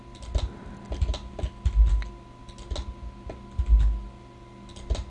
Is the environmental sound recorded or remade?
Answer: recorded